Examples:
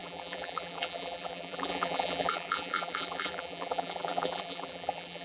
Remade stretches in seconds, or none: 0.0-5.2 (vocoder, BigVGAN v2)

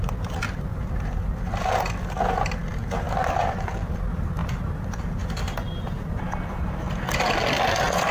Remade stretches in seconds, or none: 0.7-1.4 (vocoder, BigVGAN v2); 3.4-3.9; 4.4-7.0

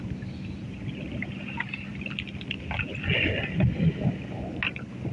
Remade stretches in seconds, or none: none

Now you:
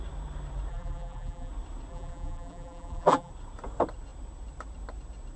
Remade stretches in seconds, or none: 0.7-1.5 (vocoder, BigVGAN v2); 1.9-3.3

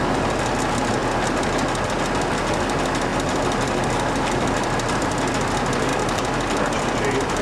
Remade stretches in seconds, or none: 3.1-5.3 (vocoder, BigVGAN v2); 5.9-7.4